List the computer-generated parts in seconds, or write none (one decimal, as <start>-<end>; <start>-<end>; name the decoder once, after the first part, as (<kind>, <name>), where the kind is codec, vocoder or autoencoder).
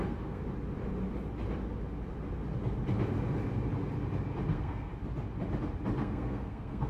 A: 0.0-0.4 (codec, SNAC); 4.5-4.9; 6.0-6.9